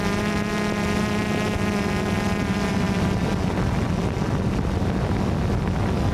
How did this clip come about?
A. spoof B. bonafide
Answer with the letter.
B